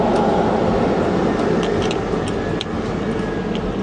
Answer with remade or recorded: recorded